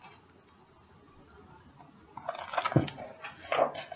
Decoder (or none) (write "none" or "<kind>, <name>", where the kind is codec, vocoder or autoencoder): none